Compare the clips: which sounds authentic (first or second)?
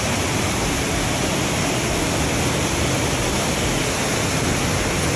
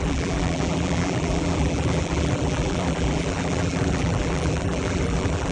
first